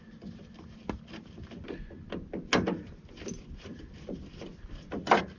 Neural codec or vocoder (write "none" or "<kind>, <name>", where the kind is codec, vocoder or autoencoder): none